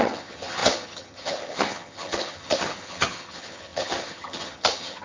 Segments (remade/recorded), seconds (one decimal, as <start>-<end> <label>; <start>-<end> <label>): 0.0-5.0 remade